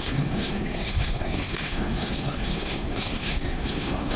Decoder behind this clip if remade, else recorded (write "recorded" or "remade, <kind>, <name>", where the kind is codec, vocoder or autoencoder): remade, codec, SNAC